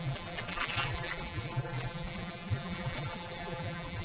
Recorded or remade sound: remade